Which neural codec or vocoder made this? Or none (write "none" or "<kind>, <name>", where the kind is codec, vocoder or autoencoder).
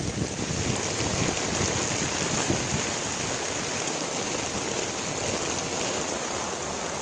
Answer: none